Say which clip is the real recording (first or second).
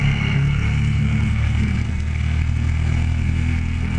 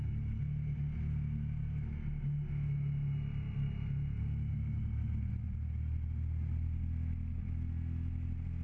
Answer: second